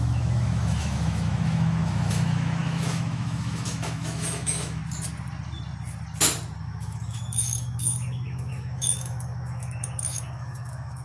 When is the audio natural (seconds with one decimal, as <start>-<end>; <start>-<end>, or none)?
4.8-6.6